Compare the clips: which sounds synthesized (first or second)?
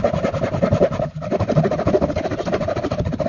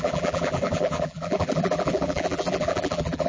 second